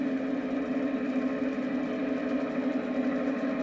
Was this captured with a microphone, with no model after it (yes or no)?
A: yes